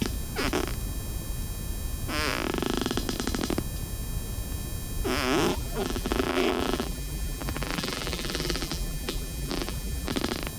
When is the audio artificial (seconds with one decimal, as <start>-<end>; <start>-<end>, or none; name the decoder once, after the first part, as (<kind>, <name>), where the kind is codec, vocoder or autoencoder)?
5.5-10.1 (vocoder, BigVGAN v2)